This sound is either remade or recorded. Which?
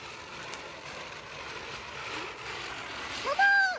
recorded